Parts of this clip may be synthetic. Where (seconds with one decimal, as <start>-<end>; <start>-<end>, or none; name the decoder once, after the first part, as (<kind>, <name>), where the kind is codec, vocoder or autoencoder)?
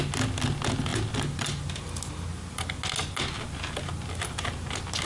none